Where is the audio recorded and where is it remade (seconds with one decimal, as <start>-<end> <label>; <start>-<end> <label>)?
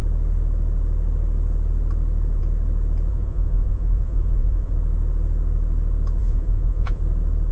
0.0-3.1 recorded; 3.1-4.7 remade; 4.7-6.2 recorded; 6.2-7.0 remade; 7.0-7.5 recorded